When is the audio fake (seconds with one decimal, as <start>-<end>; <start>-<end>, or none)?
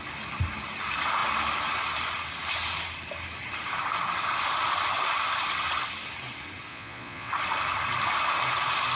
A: 6.7-7.3